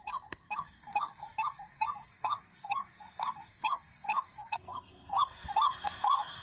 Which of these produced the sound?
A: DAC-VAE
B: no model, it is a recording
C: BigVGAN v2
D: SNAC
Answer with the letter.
D